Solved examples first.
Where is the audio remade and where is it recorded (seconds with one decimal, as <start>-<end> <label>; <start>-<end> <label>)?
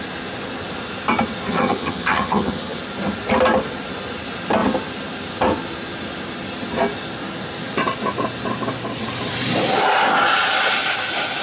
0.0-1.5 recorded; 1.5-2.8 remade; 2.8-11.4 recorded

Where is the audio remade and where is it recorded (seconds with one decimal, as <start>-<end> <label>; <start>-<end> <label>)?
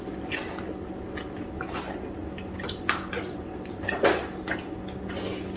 0.0-5.6 recorded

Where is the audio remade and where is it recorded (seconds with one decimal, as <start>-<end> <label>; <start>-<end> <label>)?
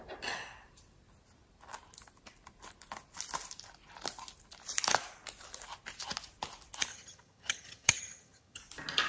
0.0-6.9 recorded; 6.9-8.6 remade; 8.6-9.1 recorded